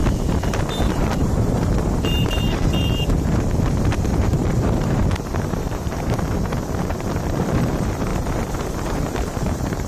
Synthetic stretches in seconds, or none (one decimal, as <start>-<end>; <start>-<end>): 0.9-8.1; 8.7-9.9